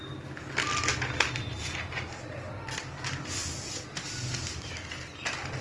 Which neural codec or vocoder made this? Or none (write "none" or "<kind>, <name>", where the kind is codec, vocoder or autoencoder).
none